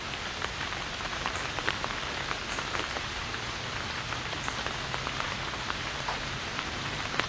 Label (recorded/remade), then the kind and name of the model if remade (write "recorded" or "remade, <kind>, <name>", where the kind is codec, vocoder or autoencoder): remade, vocoder, BigVGAN v2